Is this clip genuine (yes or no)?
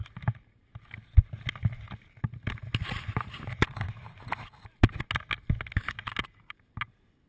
yes